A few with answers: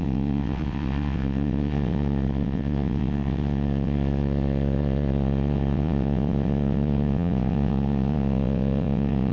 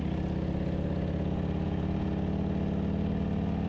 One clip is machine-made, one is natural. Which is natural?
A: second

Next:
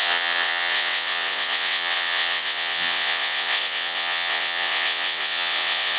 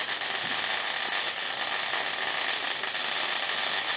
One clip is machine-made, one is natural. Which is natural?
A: second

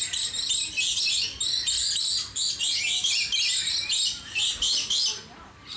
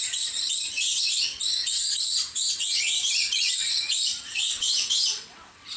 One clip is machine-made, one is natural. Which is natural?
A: first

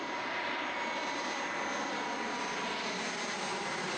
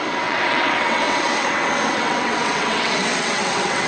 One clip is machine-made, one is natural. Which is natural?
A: first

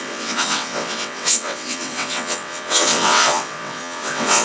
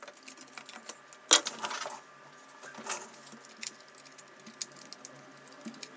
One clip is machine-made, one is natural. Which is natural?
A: second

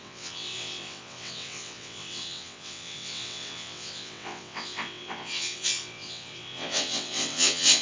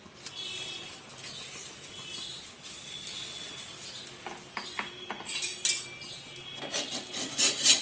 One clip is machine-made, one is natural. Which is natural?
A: second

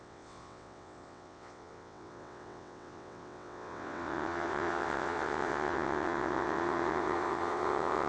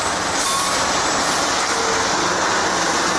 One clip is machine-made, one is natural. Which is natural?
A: second